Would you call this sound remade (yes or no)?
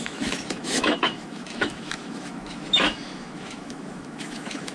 yes